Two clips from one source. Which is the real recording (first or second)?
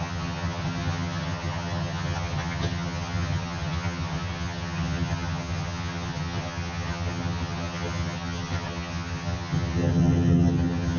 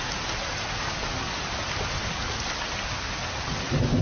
second